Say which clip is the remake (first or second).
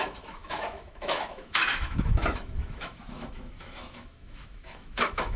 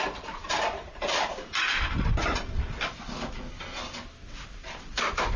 first